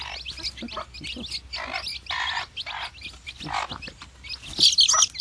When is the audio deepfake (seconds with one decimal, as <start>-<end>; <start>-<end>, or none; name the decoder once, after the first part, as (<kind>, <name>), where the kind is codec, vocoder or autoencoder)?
none